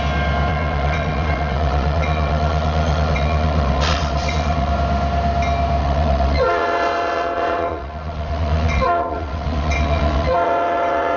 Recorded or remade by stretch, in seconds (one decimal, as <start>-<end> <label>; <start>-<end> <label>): 0.0-0.5 recorded; 0.5-4.7 remade; 4.7-5.8 recorded; 5.8-11.2 remade